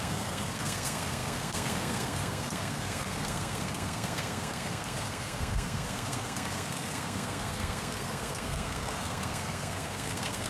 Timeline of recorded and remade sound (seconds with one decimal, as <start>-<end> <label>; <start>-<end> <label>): 0.0-10.5 remade